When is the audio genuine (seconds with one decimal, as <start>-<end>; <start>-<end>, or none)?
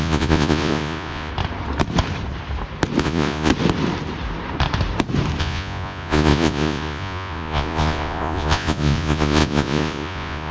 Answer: 1.3-3.0; 3.5-5.4